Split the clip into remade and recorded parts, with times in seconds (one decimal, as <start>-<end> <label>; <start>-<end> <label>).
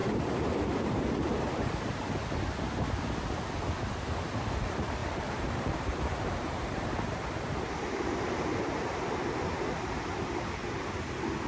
0.0-2.1 remade; 2.1-5.0 recorded; 5.0-9.0 remade; 9.0-11.5 recorded